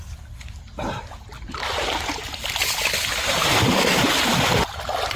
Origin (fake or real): real